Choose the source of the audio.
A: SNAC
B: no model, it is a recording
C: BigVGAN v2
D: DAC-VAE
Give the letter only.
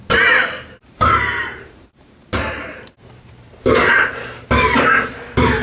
C